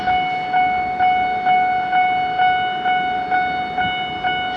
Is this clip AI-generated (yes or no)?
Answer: no